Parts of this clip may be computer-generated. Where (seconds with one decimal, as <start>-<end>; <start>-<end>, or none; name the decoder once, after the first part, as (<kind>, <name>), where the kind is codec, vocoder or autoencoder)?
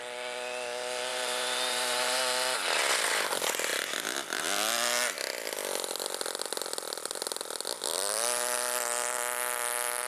1.1-2.2 (vocoder, BigVGAN v2)